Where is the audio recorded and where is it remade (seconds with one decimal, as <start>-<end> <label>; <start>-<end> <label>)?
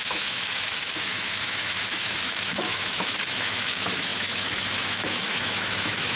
0.0-6.2 remade